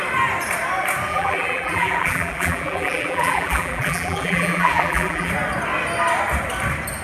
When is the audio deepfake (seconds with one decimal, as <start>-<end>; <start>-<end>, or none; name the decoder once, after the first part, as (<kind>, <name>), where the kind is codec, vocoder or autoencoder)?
1.1-5.3 (vocoder, BigVGAN v2)